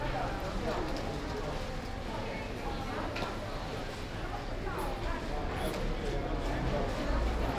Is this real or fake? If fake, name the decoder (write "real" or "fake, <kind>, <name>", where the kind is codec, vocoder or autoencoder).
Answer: real